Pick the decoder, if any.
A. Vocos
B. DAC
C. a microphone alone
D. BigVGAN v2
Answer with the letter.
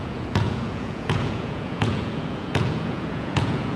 A